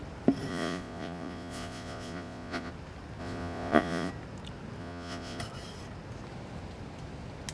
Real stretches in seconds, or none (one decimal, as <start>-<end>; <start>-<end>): 0.0-0.5; 2.7-3.2; 4.1-4.8; 5.4-7.5